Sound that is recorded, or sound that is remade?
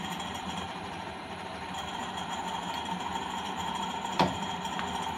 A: remade